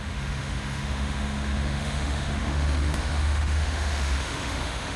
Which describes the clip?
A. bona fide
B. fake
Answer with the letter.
B